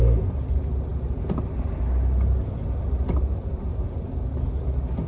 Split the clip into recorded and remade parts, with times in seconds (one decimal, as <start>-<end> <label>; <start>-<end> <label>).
0.0-3.7 recorded; 3.7-4.3 remade; 4.3-5.1 recorded